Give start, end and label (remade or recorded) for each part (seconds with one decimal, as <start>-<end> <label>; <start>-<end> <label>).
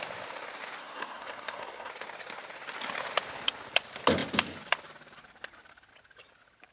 0.0-0.8 recorded; 0.8-1.9 remade; 1.9-6.7 recorded